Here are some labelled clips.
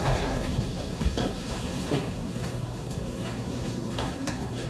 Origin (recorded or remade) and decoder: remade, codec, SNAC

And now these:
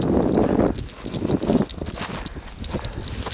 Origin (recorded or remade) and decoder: recorded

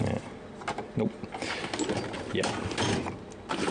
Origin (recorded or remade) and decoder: recorded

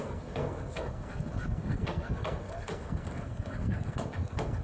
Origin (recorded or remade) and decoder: remade, codec, SNAC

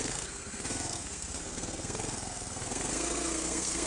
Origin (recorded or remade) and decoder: remade, codec, SNAC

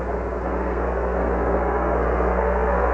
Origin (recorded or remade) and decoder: remade, codec, SNAC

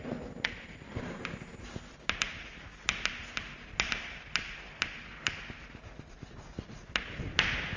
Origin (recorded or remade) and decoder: recorded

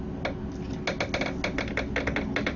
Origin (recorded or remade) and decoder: recorded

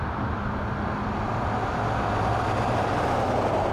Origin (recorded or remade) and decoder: recorded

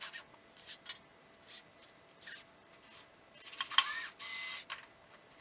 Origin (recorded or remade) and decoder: recorded